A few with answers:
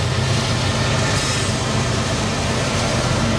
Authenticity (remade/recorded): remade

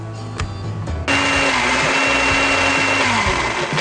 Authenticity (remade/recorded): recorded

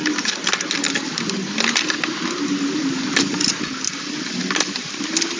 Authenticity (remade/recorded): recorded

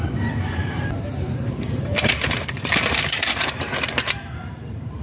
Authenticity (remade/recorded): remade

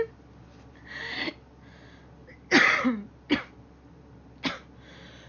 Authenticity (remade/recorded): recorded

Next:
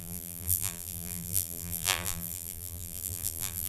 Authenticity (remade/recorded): remade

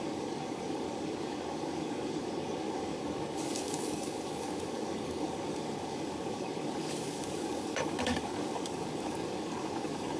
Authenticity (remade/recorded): remade